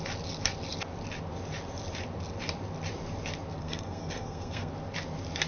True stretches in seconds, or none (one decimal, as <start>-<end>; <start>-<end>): 0.0-3.6; 4.7-5.5